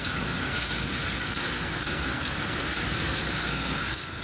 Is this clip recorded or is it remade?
remade